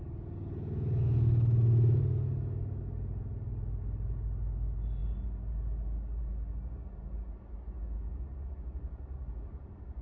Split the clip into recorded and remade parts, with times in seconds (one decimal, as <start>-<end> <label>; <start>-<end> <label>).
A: 0.0-10.0 recorded